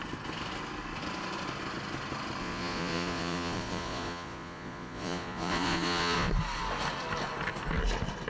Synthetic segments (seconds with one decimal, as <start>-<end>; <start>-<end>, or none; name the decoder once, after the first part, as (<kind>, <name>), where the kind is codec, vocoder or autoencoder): 2.4-6.3 (vocoder, Vocos)